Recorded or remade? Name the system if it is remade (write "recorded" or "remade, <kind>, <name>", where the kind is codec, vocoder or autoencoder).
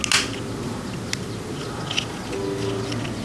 recorded